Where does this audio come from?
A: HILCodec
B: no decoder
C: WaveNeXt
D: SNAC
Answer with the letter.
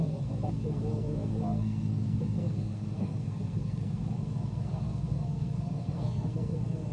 D